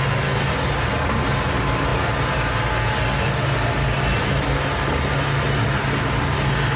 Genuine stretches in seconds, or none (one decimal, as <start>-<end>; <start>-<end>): 0.0-6.8